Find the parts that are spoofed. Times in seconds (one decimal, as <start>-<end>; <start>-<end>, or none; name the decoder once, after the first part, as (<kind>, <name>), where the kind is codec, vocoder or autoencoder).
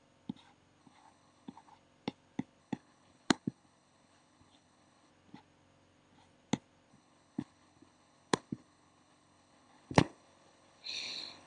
0.8-1.7 (codec, HILCodec); 2.6-5.1; 6.9-11.5